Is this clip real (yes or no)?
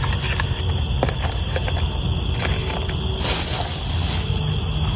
yes